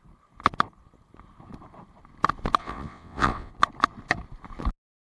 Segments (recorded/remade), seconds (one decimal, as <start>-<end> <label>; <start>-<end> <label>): 0.0-2.6 recorded; 2.6-3.5 remade; 3.5-5.1 recorded

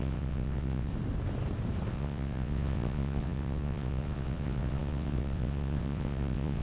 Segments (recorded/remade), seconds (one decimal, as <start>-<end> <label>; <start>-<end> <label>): 0.0-0.9 remade; 0.9-1.9 recorded; 1.9-6.6 remade

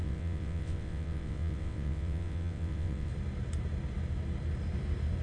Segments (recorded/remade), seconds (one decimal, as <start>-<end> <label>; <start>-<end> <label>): 0.0-3.1 remade; 3.1-5.2 recorded

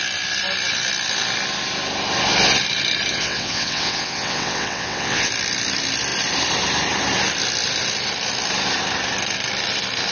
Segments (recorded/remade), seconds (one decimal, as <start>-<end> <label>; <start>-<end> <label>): 0.0-3.1 recorded; 3.1-5.3 remade; 5.3-10.1 recorded

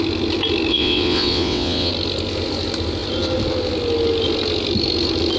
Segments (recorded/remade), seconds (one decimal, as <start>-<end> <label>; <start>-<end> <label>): 0.0-0.7 recorded; 0.7-1.9 remade; 1.9-5.4 recorded

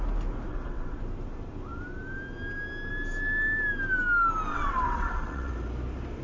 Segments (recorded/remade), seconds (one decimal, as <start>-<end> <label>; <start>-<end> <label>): 0.0-0.5 recorded; 0.5-1.0 remade; 1.0-4.5 recorded; 4.5-5.5 remade; 5.5-6.2 recorded

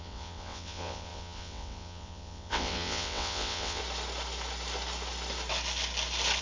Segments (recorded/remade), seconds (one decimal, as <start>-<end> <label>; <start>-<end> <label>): 0.0-3.8 remade; 3.8-6.4 recorded

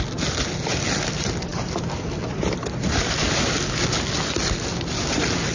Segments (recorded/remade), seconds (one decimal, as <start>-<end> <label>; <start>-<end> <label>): 0.0-5.5 recorded